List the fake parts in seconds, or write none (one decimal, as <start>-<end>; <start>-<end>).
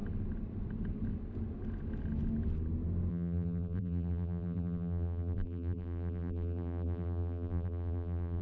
3.1-8.4